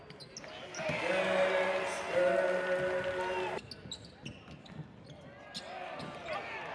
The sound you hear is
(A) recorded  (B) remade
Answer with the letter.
A